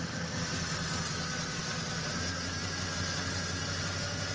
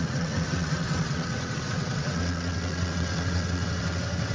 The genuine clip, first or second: first